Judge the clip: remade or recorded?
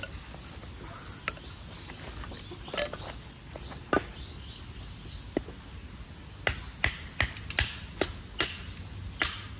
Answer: recorded